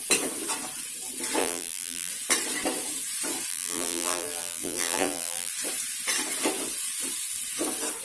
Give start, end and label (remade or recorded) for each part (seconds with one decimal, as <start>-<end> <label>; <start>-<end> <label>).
0.0-1.4 recorded; 1.4-2.1 remade; 2.1-3.5 recorded; 3.5-5.5 remade; 5.5-8.0 recorded